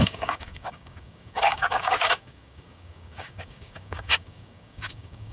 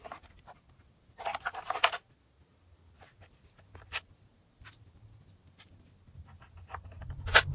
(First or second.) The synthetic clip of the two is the first